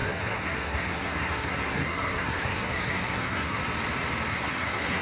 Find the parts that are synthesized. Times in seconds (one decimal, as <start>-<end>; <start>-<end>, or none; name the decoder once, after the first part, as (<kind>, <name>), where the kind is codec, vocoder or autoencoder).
0.0-3.6 (codec, SNAC); 4.3-5.0